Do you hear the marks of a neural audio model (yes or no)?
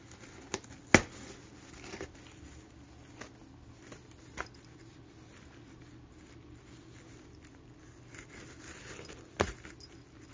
no